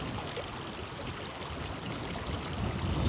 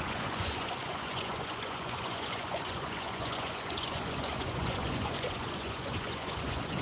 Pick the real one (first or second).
first